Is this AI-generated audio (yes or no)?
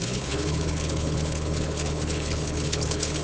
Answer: yes